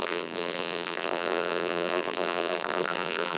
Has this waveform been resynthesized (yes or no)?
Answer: yes